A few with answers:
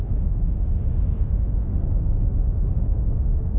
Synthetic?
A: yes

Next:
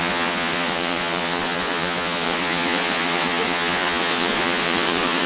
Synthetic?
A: yes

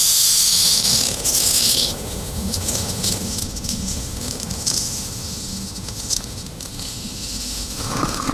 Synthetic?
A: yes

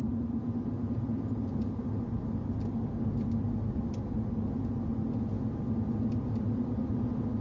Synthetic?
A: no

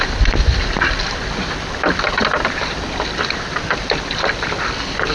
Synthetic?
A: no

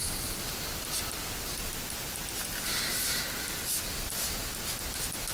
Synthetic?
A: no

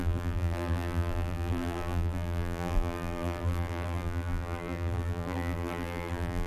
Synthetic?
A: yes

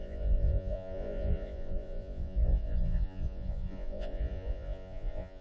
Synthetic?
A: yes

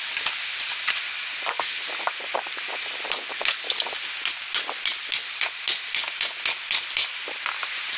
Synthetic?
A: no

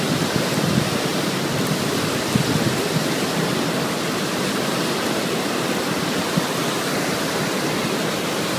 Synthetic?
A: no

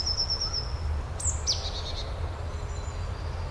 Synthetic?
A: no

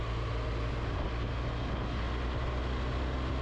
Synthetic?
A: no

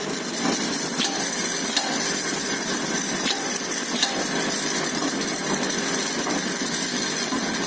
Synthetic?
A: no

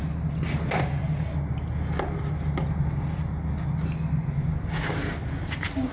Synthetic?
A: no